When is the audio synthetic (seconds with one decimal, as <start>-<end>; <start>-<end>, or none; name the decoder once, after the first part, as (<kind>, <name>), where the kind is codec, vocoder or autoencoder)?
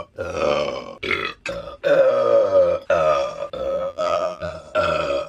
3.7-4.5 (vocoder, BigVGAN v2)